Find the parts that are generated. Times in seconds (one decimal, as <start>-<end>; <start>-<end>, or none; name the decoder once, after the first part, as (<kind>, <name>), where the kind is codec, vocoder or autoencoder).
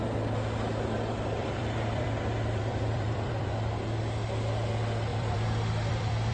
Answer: 1.4-4.0 (vocoder, BigVGAN v2); 5.1-6.3